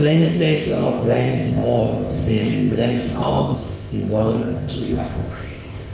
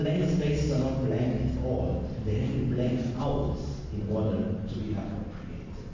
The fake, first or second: first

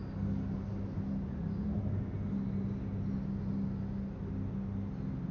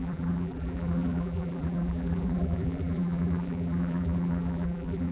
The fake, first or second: second